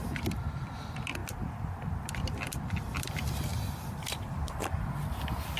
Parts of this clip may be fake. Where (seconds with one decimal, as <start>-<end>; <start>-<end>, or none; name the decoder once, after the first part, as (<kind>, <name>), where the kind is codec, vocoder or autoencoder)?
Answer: none

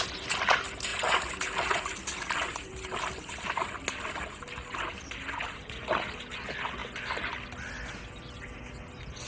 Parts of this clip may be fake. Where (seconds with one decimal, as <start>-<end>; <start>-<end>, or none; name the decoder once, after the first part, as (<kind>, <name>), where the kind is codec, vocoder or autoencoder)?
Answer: none

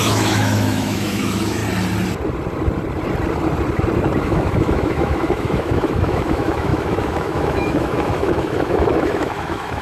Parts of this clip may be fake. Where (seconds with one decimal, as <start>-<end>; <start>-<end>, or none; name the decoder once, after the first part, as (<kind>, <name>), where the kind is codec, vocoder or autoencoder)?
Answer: 0.0-1.6 (autoencoder, DAC-VAE); 4.2-9.8

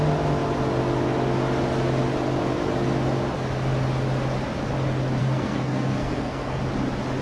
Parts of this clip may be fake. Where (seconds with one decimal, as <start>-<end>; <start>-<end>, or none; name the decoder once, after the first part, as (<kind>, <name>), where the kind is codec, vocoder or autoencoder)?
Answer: 5.2-6.6 (codec, SNAC)

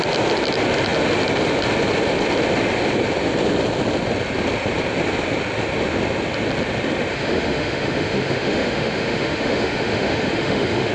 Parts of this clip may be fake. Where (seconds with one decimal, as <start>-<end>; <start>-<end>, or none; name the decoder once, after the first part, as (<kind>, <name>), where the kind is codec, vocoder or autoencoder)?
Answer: 7.1-10.9 (autoencoder, DAC-VAE)